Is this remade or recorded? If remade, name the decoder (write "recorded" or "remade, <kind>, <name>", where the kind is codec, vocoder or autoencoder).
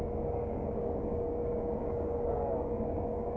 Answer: remade, codec, DAC